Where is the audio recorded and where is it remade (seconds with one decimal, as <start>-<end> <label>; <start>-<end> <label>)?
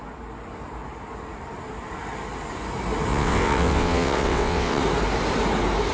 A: 0.0-3.1 recorded; 3.1-4.8 remade; 4.8-5.9 recorded